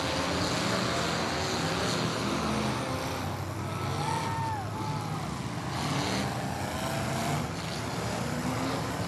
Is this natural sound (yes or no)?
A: yes